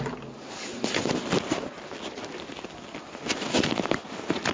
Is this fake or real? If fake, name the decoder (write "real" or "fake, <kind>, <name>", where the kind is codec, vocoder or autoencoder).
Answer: real